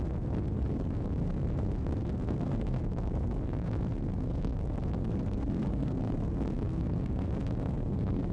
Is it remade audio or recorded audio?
remade